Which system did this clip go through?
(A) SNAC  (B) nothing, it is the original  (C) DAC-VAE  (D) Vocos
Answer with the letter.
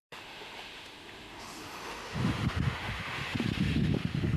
C